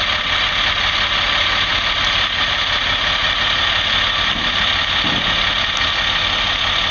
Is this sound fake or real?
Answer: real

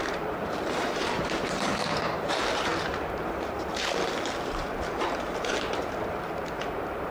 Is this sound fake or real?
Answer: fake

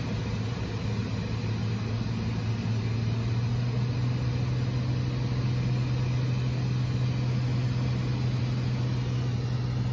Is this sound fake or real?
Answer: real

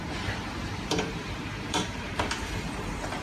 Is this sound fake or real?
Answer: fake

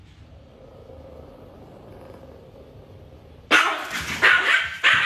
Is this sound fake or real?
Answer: fake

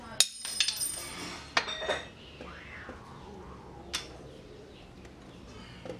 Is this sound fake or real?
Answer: real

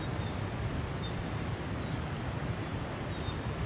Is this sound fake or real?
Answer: real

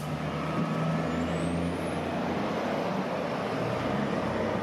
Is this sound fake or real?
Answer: real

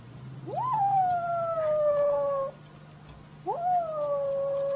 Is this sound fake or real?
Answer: real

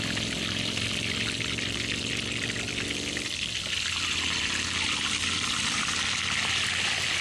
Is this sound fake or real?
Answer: real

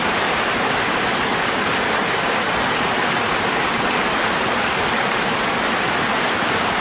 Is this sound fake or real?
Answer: fake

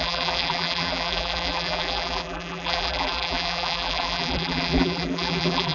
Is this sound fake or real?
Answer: fake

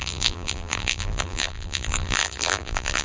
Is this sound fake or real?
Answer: fake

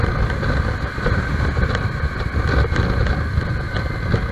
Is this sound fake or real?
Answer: real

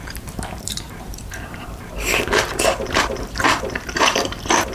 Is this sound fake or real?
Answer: fake